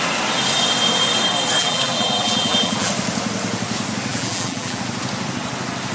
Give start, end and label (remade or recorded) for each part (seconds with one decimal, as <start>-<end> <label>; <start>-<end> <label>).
0.0-1.6 recorded; 1.6-2.9 remade; 2.9-4.1 recorded; 4.1-4.8 remade; 4.8-5.9 recorded

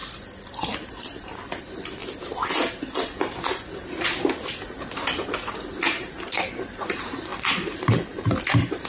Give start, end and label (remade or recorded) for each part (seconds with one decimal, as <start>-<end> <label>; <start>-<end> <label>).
0.0-2.0 remade; 2.0-5.8 recorded; 5.8-8.9 remade

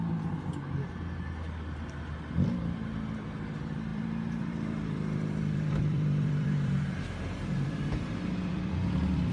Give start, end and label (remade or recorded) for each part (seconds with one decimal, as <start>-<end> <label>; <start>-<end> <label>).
0.0-3.9 recorded; 3.9-8.7 remade; 8.7-9.3 recorded

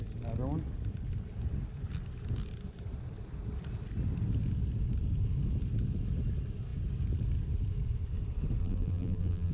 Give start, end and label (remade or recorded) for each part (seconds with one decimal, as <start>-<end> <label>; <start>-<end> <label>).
0.0-8.6 recorded; 8.6-9.5 remade

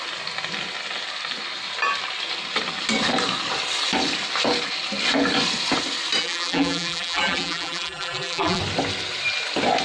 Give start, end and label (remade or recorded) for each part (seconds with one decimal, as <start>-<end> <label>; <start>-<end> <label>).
0.0-6.2 recorded; 6.2-8.6 remade; 8.6-9.8 recorded

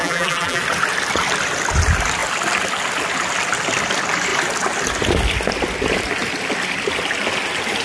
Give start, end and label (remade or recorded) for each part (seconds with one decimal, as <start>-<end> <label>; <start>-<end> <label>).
0.0-0.6 remade; 0.6-7.8 recorded

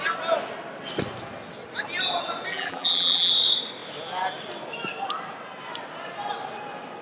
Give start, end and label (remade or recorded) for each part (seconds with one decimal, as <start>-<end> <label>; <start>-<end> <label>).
0.0-2.5 recorded; 2.5-3.3 remade; 3.3-7.0 recorded